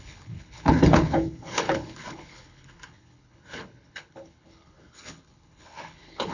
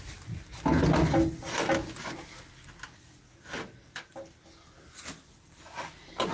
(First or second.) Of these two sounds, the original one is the second